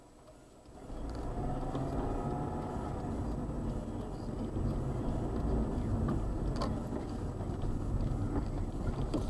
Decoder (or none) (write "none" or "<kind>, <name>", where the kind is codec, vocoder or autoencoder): none